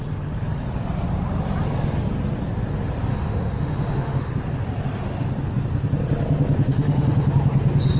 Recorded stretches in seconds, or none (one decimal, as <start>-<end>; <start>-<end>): 0.0-3.1; 4.3-6.7; 7.3-8.0